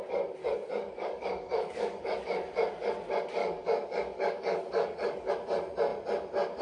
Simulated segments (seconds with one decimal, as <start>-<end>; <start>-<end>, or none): 0.4-2.2; 3.4-5.3